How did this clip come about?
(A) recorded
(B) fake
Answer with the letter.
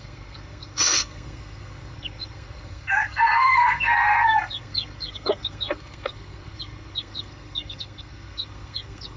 B